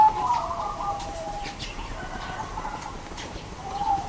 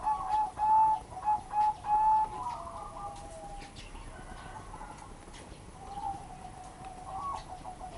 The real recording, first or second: second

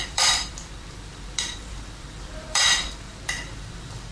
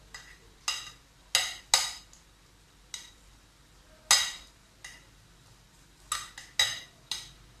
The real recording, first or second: second